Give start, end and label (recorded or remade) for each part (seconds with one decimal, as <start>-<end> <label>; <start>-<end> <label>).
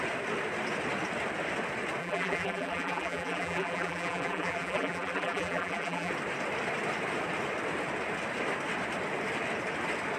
0.0-2.0 recorded; 2.0-6.1 remade; 6.1-10.2 recorded